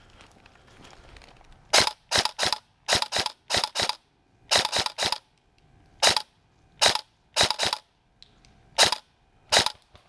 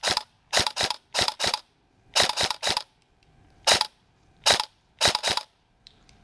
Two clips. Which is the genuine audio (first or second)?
first